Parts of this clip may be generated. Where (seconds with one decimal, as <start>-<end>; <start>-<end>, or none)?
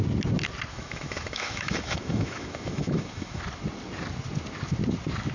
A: 0.7-3.4